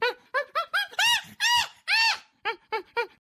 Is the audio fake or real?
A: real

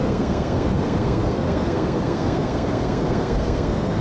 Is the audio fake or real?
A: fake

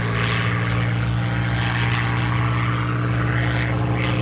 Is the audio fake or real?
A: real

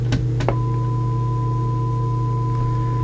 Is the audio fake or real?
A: real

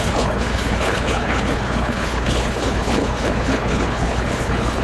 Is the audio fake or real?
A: fake